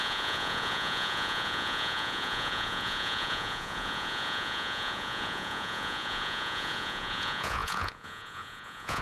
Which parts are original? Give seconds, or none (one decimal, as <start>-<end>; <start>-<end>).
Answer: none